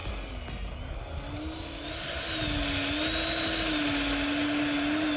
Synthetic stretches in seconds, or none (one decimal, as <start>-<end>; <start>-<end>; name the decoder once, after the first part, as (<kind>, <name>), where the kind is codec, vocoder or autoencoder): none